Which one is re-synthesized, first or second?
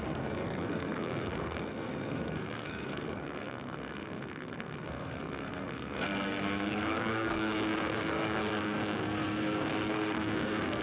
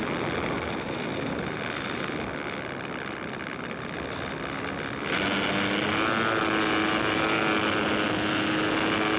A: first